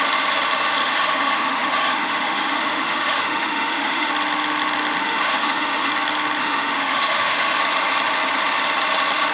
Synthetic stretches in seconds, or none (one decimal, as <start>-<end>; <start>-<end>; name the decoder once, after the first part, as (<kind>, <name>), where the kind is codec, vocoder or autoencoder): 0.8-4.1 (autoencoder, DAC-VAE); 5.0-5.9; 6.4-7.6